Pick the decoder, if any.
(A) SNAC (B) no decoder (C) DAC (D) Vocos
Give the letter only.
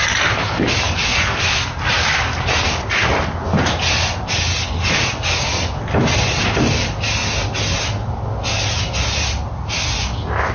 B